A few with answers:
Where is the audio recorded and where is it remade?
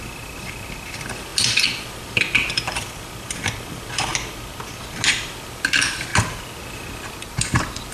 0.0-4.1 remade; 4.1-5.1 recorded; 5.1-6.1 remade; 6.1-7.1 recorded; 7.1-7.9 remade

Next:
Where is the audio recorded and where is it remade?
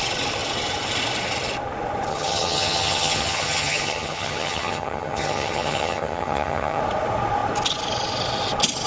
0.0-2.1 recorded; 2.1-6.8 remade; 6.8-8.9 recorded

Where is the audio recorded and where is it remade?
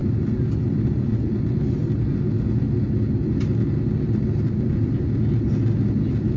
0.0-6.4 recorded